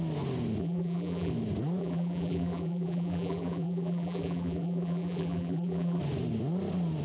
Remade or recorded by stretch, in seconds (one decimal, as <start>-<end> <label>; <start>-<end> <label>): 0.0-0.6 recorded; 0.6-1.3 remade; 1.3-1.8 recorded; 1.8-6.0 remade; 6.0-7.0 recorded